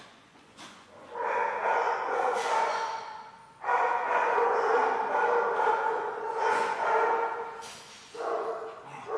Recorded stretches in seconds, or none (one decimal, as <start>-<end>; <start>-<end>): 1.2-1.7; 4.8-5.7